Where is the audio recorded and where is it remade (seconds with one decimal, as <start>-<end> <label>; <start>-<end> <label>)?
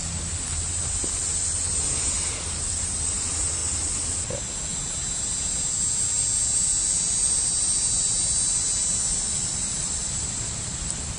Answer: 0.0-11.2 recorded